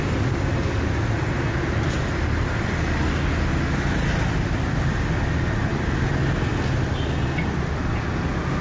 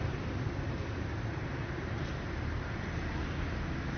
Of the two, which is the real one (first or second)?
first